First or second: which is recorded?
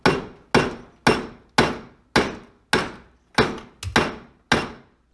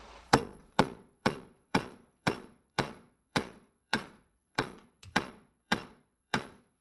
first